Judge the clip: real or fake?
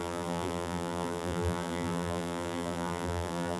fake